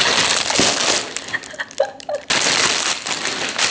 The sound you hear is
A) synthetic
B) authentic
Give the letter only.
B